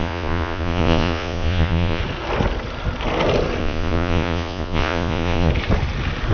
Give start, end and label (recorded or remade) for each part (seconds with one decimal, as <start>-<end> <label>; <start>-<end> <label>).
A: 0.0-2.0 remade; 2.0-3.6 recorded; 3.6-5.5 remade; 5.5-6.3 recorded